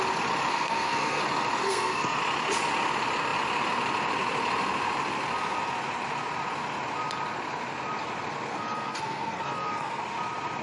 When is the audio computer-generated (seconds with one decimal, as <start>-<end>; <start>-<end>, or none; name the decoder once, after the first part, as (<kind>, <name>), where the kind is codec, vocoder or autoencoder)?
0.5-1.2 (codec, SNAC); 1.6-2.2; 8.5-10.0